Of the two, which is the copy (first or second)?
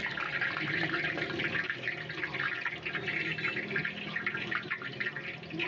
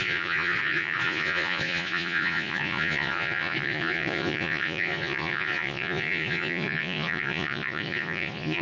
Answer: second